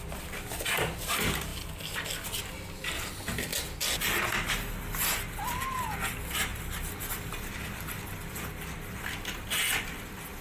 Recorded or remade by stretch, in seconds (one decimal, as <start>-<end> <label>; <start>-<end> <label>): 0.0-6.5 recorded; 6.5-7.5 remade; 7.5-10.4 recorded